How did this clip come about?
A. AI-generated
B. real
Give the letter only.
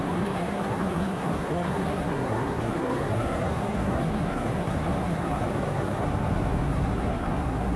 A